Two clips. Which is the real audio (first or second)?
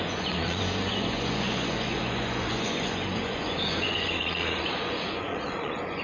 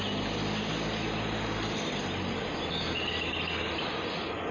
second